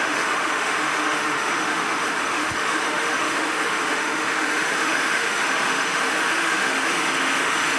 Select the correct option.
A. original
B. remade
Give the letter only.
B